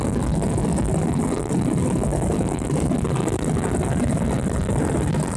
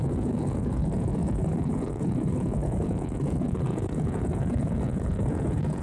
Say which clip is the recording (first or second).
first